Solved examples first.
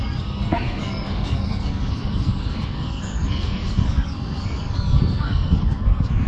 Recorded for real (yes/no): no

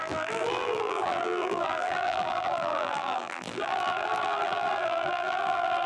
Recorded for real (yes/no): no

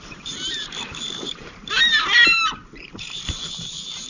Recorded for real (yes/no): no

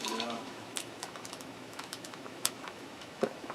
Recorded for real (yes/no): no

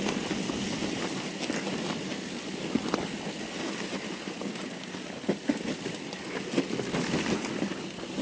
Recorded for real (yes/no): yes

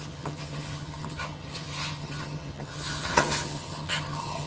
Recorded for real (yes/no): no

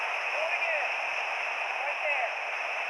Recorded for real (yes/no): yes